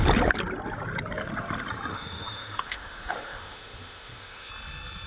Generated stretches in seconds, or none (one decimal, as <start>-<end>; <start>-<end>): 1.9-4.5